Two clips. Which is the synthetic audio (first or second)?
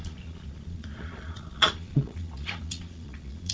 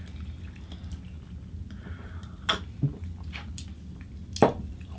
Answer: first